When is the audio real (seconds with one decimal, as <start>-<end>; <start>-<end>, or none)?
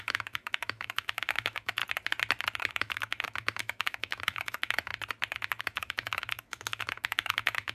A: 1.8-2.7; 4.9-5.6